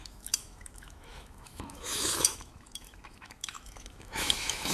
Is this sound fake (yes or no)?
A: yes